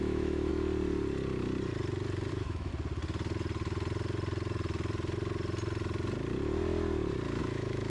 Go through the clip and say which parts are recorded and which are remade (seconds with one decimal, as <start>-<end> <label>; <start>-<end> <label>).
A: 0.0-0.5 remade; 0.5-2.3 recorded; 2.3-2.7 remade; 2.7-7.4 recorded; 7.4-7.9 remade